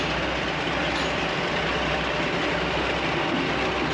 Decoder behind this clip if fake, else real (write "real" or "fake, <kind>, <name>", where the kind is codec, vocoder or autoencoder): real